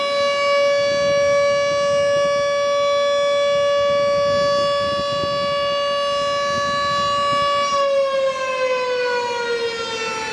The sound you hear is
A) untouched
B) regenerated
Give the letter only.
A